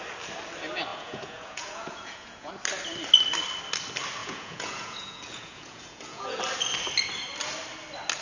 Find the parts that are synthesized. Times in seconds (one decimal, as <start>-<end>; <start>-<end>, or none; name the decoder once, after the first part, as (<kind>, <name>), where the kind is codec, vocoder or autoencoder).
0.9-2.5 (vocoder, Vocos); 4.2-6.4